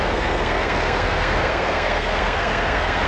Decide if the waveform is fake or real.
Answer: fake